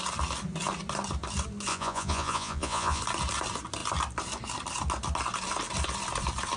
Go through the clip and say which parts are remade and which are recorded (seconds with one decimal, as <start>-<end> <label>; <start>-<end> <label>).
0.0-1.7 recorded; 1.7-3.0 remade; 3.0-6.6 recorded